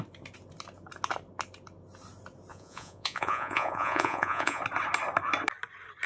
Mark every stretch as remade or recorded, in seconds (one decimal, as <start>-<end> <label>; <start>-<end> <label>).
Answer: 0.0-2.5 recorded; 2.5-4.6 remade; 4.6-6.1 recorded